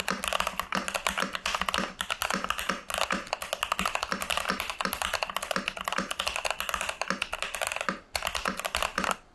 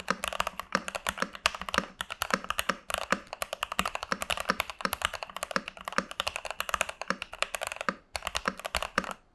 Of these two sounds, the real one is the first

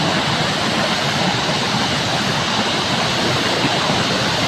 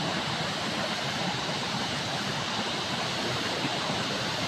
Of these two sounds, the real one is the first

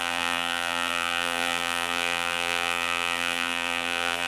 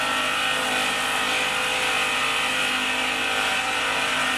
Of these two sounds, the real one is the second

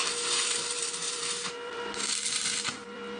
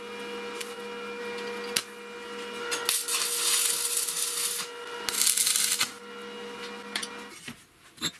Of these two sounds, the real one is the second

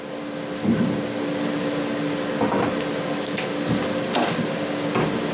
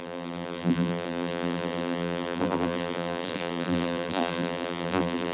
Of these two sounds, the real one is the first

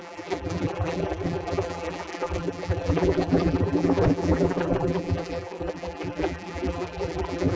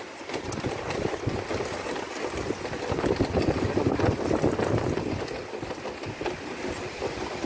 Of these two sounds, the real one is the second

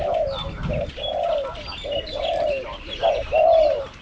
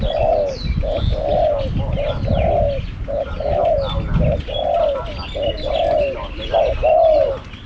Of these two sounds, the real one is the second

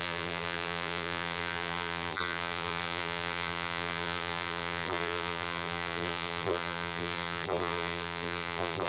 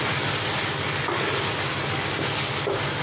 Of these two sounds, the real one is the second